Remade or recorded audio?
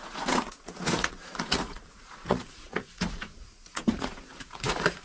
remade